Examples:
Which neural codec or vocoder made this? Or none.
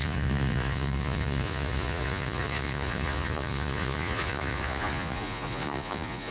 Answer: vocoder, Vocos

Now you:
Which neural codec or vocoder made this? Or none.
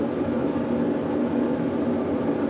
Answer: none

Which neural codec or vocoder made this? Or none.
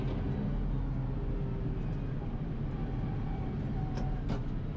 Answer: none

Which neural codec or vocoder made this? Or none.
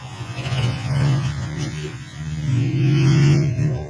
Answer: vocoder, Vocos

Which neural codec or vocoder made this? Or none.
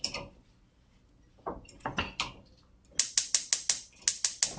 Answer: none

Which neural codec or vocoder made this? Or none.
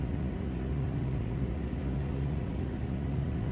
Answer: vocoder, Vocos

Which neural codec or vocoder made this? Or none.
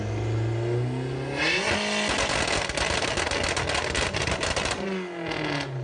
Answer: none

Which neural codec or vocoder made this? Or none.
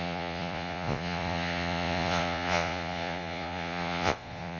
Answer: vocoder, Vocos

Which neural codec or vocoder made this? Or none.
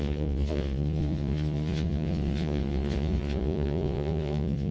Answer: vocoder, Vocos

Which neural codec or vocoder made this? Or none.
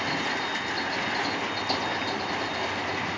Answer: none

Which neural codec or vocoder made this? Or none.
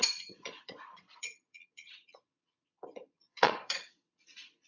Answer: vocoder, Vocos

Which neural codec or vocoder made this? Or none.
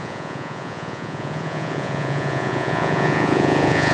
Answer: vocoder, Vocos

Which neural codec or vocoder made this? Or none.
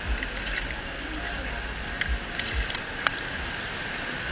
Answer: none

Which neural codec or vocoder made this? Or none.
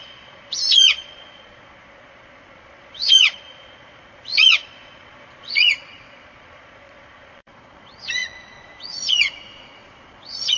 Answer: vocoder, Vocos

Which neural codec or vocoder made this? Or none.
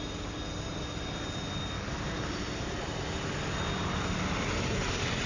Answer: none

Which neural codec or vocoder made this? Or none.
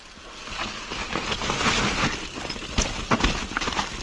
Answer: none